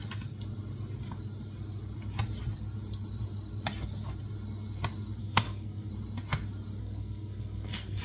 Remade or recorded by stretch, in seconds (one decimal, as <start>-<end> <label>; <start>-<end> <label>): 0.0-5.2 recorded; 5.2-5.9 remade; 5.9-6.8 recorded; 6.8-8.0 remade

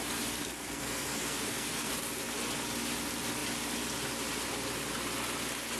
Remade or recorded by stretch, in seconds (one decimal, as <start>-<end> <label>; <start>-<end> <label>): 0.0-0.4 recorded; 0.4-1.9 remade; 1.9-5.8 recorded